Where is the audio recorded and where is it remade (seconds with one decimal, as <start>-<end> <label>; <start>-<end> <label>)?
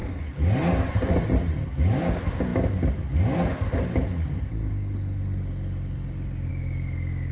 0.0-7.3 recorded